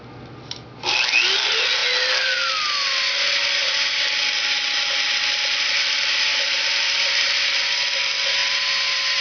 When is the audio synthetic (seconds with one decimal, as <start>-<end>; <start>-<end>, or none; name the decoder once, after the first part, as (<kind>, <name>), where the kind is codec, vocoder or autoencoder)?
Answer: 6.3-7.3 (vocoder, BigVGAN v2); 8.4-9.2